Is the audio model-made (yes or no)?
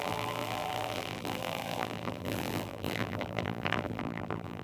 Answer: yes